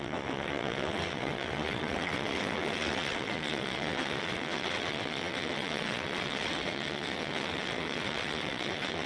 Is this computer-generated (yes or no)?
yes